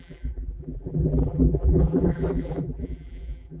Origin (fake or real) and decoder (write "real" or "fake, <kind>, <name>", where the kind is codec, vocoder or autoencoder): fake, vocoder, BigVGAN v2